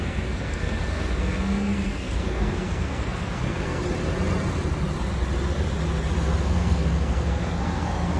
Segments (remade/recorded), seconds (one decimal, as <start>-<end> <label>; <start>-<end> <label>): 0.0-3.8 remade; 3.8-6.4 recorded; 6.4-8.2 remade